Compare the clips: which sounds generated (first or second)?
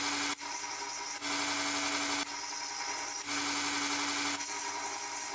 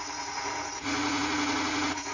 second